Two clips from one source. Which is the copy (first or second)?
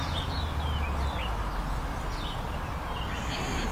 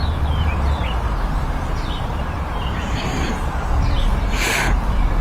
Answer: second